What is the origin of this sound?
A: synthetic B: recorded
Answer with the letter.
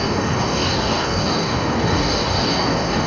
A